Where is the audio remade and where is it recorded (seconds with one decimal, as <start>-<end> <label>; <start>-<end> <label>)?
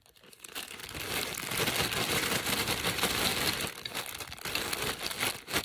0.0-0.8 remade; 0.8-2.1 recorded; 2.1-3.3 remade; 3.3-5.6 recorded